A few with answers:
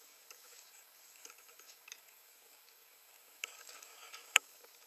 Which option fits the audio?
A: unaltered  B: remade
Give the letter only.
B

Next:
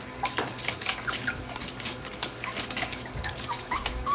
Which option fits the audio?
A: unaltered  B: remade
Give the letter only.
B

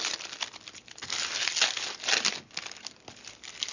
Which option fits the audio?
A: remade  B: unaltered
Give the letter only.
B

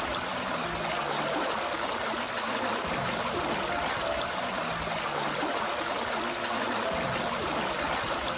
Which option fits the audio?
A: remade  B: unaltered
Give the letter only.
B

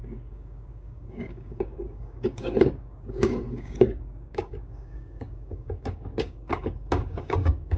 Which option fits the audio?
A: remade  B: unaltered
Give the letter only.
A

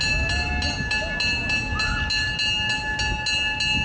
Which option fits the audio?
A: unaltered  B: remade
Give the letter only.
A